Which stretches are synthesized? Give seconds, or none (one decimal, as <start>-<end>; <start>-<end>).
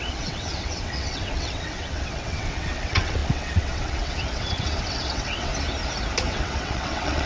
0.0-5.5; 6.3-7.3